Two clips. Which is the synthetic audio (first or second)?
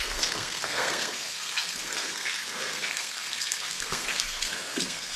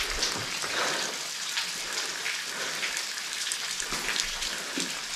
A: first